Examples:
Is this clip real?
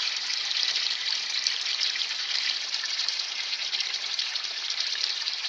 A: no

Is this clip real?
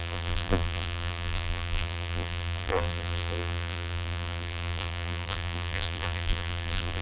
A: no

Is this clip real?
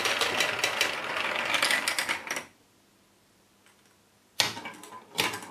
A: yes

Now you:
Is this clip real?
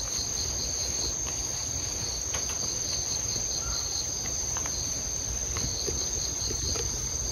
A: no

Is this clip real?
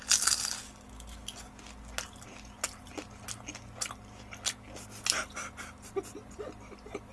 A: yes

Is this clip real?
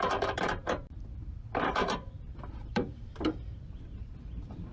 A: no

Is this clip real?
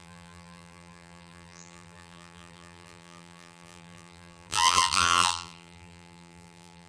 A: no